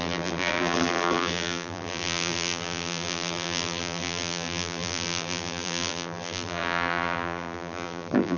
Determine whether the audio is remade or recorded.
remade